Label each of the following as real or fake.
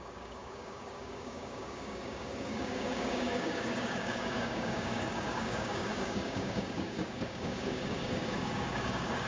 fake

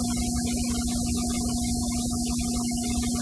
real